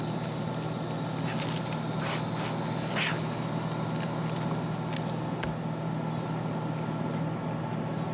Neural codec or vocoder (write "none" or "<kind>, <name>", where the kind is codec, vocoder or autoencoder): none